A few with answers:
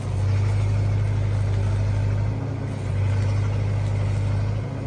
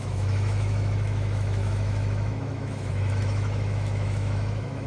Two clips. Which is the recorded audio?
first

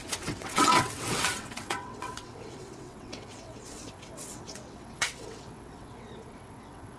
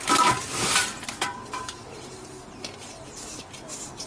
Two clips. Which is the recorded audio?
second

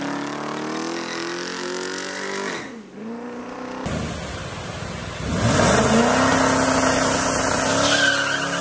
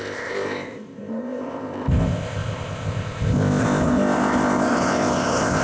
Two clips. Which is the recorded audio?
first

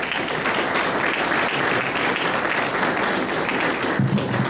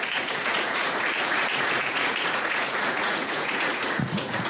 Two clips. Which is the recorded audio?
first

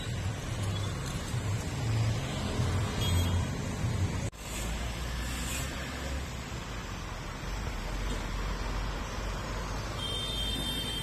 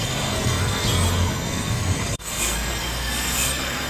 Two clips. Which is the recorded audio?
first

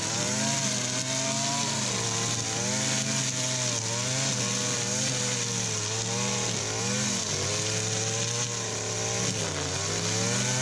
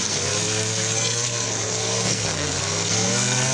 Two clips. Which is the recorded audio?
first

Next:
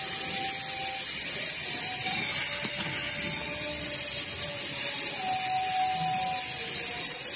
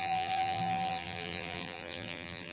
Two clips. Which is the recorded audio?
first